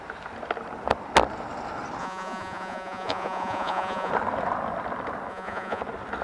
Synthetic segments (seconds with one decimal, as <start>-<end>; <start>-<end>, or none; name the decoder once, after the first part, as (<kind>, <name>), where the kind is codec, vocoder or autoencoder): 2.0-4.1 (vocoder, Vocos); 5.3-5.8